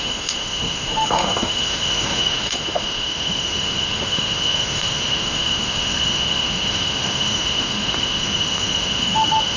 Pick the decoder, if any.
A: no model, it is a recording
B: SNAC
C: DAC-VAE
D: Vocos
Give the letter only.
C